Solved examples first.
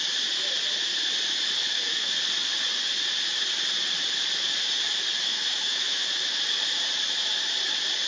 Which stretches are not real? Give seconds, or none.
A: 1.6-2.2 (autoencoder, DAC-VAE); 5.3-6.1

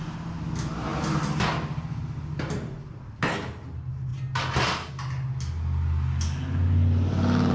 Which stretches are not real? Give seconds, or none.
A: none